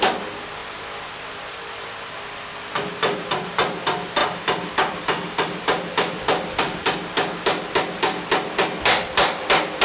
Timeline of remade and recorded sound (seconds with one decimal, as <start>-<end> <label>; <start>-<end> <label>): 0.0-0.6 recorded; 0.6-1.9 remade; 1.9-4.2 recorded; 4.2-6.8 remade; 6.8-9.8 recorded